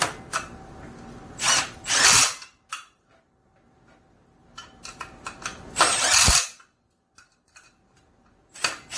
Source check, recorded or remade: recorded